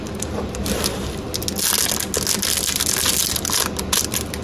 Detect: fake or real real